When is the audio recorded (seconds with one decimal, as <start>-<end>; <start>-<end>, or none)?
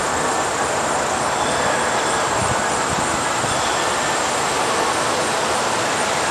0.0-6.3